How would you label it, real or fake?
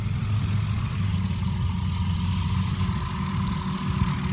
real